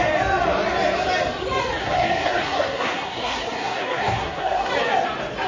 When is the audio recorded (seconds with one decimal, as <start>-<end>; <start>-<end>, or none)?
0.0-1.8; 4.7-5.5